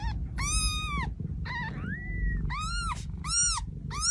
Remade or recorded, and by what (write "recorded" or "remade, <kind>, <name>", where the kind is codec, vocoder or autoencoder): recorded